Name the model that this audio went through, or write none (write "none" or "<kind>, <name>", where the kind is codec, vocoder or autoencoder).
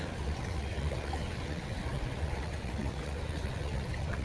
vocoder, WaveNeXt